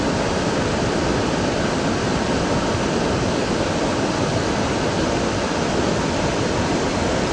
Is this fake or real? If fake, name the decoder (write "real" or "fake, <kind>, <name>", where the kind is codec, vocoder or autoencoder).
real